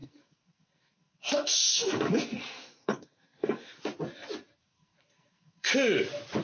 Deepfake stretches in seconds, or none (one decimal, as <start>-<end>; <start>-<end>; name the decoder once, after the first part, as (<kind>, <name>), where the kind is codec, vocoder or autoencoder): 0.0-3.8 (codec, SNAC); 4.6-5.7